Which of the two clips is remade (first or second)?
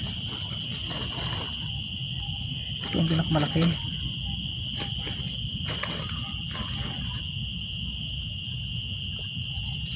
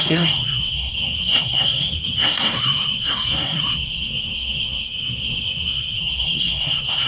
second